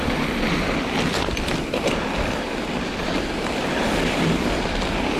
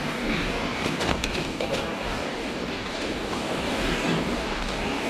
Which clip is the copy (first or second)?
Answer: second